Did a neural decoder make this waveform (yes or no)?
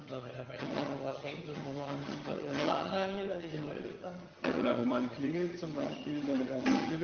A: yes